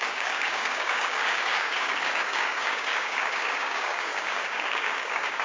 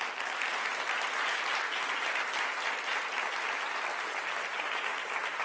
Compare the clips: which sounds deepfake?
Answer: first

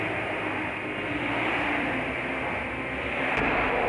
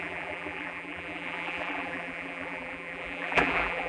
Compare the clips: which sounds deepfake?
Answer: second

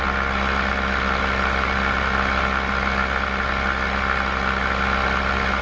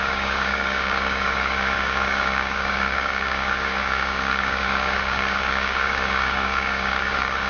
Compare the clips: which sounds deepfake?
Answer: second